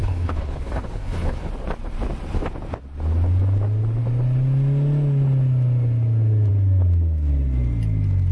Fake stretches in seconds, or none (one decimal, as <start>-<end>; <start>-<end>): 0.0-1.5